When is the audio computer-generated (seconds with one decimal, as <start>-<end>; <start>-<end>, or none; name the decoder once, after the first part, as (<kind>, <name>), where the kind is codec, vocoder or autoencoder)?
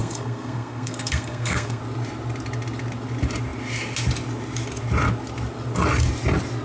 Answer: 0.0-1.8 (codec, SNAC)